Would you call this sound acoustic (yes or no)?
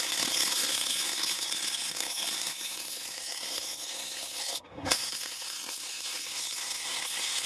no